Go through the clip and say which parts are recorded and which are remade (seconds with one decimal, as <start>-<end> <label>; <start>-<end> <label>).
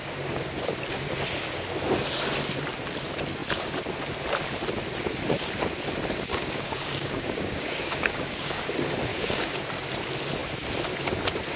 0.0-6.3 recorded; 6.3-8.6 remade; 8.6-9.1 recorded; 9.1-9.6 remade; 9.6-11.6 recorded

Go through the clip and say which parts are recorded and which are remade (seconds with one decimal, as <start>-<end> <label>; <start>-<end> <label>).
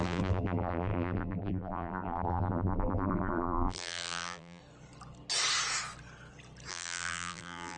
0.0-4.6 remade; 4.6-6.7 recorded; 6.7-7.8 remade